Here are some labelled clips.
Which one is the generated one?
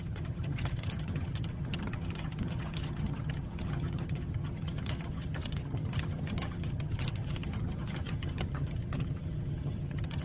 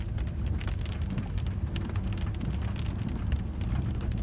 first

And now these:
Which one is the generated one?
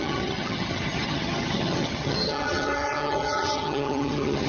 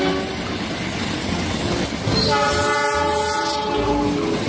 first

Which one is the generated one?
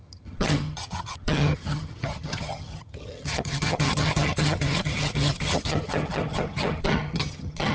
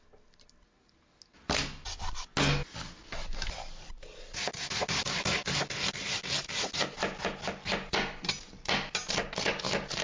first